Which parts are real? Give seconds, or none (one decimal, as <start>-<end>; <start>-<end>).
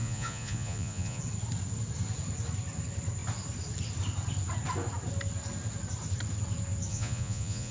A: 1.2-6.9